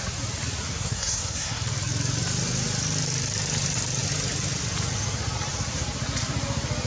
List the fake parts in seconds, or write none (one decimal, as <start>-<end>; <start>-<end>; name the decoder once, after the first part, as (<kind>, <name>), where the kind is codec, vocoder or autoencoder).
0.7-1.6 (codec, SNAC)